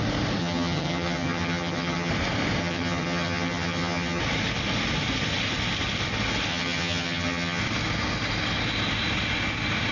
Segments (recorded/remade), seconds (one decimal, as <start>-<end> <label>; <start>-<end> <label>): 0.0-0.4 recorded; 0.4-2.1 remade; 2.1-2.6 recorded; 2.6-4.2 remade; 4.2-6.5 recorded; 6.5-7.6 remade; 7.6-9.9 recorded